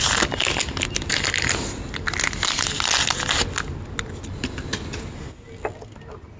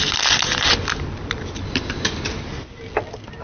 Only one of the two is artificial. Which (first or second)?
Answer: second